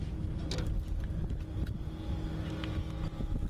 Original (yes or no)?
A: yes